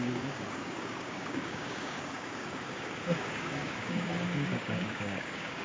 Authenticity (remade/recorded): remade